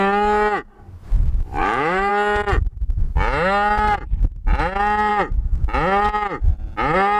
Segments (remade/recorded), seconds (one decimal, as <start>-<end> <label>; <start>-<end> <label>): 0.0-1.6 recorded; 1.6-2.1 remade; 2.1-7.2 recorded